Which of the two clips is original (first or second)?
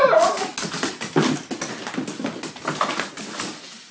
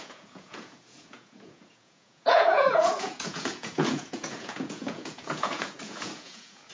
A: first